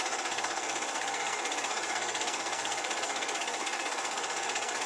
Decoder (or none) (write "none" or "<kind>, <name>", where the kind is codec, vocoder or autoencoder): codec, SNAC